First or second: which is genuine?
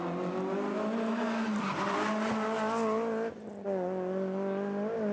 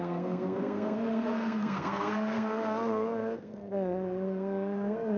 first